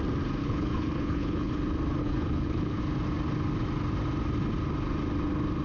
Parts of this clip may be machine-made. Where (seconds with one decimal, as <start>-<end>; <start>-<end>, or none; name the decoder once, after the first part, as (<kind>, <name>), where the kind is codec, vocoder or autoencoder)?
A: 0.4-1.5 (codec, HILCodec); 2.0-2.8